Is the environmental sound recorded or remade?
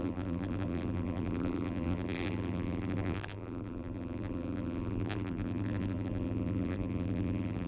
remade